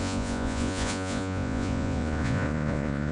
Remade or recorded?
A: remade